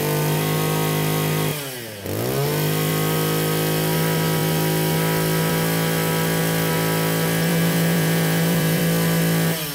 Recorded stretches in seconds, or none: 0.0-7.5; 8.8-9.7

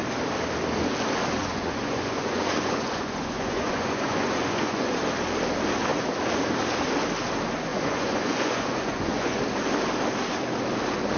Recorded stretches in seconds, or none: 0.0-1.4; 5.0-7.7; 9.4-11.2

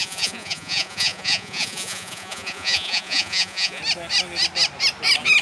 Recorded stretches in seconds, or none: 3.8-5.4